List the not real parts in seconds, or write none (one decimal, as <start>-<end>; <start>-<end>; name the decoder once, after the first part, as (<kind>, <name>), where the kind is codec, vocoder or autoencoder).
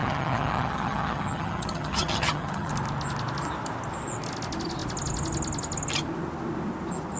0.0-2.7 (vocoder, HiFi-GAN)